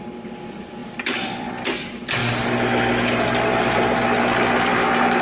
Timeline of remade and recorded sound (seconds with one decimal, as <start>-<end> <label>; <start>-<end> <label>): 0.0-0.8 recorded; 0.8-1.5 remade; 1.5-2.2 recorded; 2.2-2.9 remade; 2.9-5.2 recorded